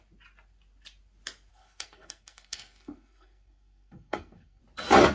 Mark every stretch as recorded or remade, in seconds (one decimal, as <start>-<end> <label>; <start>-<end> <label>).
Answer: 0.0-1.5 recorded; 1.5-4.6 remade; 4.6-5.1 recorded